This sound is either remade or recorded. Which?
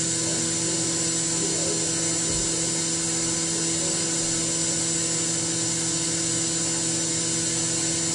recorded